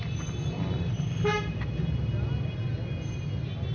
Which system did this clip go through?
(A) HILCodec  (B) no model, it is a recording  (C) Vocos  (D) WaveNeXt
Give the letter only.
B